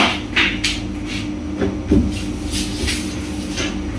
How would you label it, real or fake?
real